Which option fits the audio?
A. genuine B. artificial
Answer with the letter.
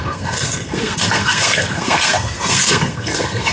B